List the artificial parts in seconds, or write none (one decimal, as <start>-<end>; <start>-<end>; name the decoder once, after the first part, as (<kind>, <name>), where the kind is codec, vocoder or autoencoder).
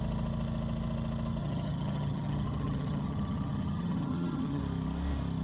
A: 1.4-4.6 (vocoder, HiFi-GAN)